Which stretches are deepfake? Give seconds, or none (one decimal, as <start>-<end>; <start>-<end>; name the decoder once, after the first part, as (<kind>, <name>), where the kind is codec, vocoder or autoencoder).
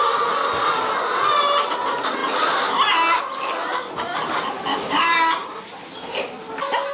4.7-5.5 (codec, DAC)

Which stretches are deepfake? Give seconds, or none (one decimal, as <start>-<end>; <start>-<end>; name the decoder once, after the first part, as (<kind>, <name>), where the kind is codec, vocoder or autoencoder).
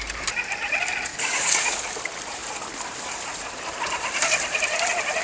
1.1-1.8 (codec, DAC)